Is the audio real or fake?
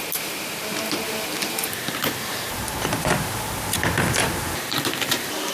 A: fake